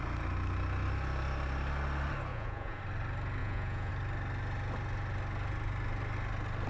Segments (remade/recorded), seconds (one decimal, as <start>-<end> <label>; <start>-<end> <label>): 0.0-2.3 recorded; 2.3-2.8 remade; 2.8-3.4 recorded; 3.4-3.9 remade; 3.9-6.7 recorded